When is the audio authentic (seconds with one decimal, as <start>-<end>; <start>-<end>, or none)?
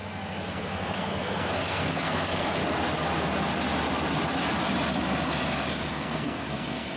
2.6-5.7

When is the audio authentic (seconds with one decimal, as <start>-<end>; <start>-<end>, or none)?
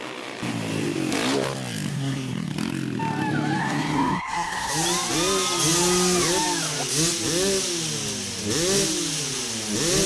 0.0-1.9; 2.5-3.6; 4.7-10.1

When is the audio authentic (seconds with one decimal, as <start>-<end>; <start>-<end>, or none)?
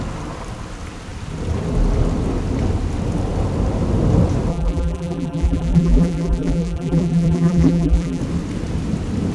0.0-4.5; 8.2-9.3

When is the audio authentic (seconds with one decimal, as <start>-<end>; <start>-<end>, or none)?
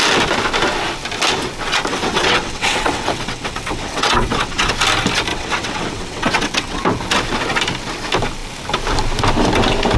0.0-1.9; 4.7-5.3; 6.8-10.0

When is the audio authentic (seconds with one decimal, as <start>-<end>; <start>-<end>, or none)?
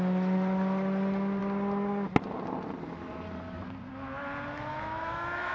0.0-4.7